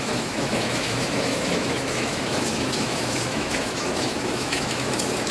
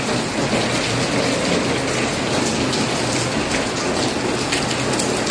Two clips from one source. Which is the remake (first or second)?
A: first